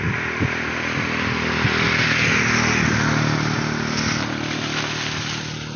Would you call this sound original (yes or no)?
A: yes